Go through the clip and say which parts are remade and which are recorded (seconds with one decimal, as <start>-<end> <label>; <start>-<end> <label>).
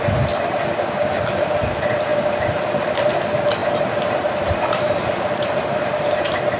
0.0-3.6 recorded; 3.6-6.6 remade